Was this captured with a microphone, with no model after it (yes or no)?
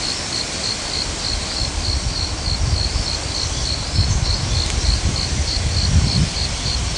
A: yes